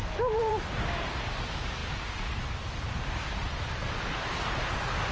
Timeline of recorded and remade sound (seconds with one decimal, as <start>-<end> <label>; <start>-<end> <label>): 0.0-5.1 recorded